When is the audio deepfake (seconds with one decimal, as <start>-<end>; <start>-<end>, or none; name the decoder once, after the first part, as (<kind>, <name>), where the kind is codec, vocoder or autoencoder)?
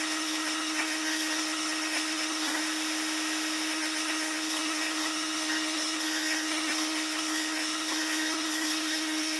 0.0-2.6 (codec, SNAC); 3.7-9.4